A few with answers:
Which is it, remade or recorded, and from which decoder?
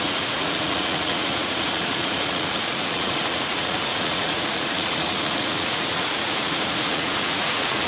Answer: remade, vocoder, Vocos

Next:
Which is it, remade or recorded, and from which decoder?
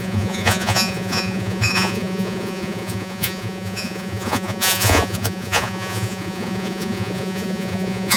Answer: remade, vocoder, Vocos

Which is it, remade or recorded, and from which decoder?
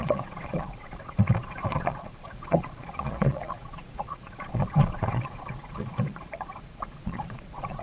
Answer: remade, vocoder, Vocos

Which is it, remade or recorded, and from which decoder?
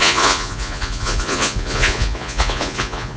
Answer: remade, vocoder, Vocos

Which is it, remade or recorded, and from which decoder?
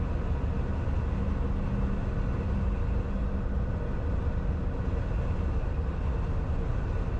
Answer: recorded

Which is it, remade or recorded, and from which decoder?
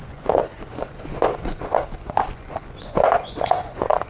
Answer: remade, vocoder, Vocos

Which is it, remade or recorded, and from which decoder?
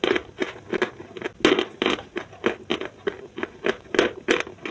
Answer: recorded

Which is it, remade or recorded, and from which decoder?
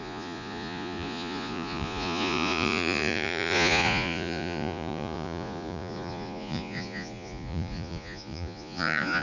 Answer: remade, vocoder, Vocos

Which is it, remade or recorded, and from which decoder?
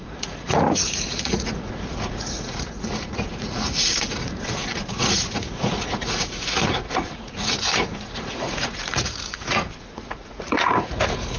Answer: remade, vocoder, Vocos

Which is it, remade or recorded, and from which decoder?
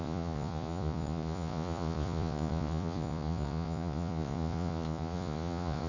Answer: remade, vocoder, Vocos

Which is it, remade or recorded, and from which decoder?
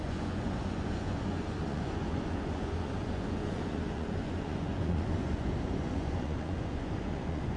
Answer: remade, vocoder, Vocos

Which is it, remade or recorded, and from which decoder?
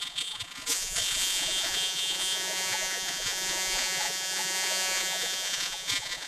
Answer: remade, vocoder, Vocos